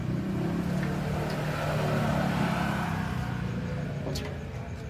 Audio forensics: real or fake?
real